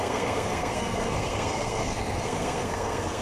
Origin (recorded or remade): remade